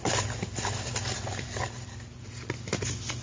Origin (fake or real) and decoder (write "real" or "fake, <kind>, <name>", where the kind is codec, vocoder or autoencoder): real